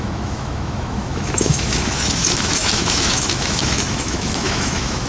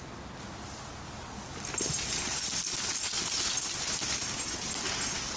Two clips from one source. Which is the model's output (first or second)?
first